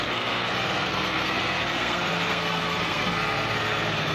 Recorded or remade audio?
remade